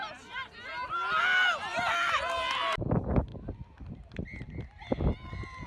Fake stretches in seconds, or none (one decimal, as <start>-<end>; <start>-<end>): none